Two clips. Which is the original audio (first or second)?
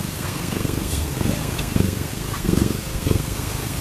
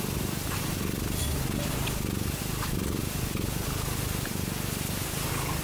second